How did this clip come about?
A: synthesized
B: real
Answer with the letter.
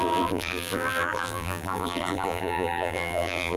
A